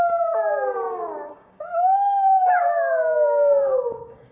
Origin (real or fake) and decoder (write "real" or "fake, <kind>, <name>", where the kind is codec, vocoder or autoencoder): fake, codec, DAC